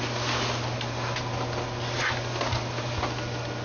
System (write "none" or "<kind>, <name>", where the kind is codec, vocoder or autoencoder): none